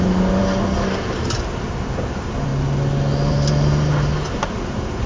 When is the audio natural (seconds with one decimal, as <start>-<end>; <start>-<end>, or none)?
0.4-1.0; 2.5-3.1